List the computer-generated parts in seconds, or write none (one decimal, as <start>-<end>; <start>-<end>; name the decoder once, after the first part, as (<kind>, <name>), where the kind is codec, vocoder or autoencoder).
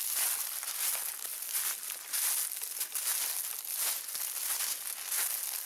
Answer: none